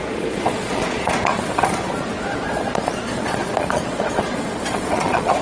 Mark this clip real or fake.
fake